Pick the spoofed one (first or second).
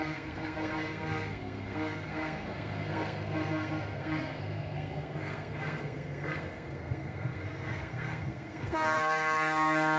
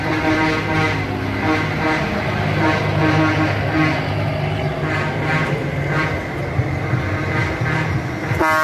first